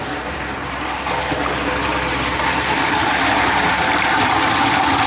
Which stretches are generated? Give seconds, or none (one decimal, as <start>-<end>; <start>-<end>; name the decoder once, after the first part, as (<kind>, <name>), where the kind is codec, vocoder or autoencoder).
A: none